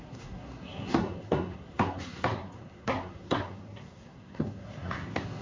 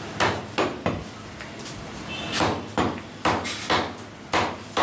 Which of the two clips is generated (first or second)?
first